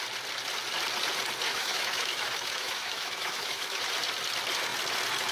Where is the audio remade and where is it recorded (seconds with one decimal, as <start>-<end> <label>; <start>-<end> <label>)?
0.0-1.5 recorded; 1.5-3.8 remade; 3.8-5.3 recorded